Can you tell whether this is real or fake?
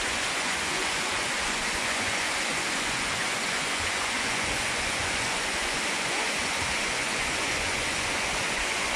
fake